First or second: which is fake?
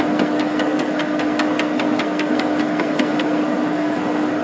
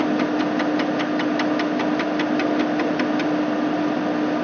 first